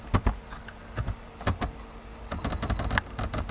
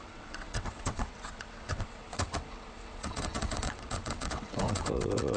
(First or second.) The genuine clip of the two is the first